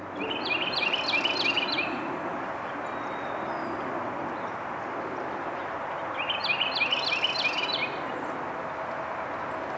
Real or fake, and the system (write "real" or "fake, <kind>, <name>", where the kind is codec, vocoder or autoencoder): real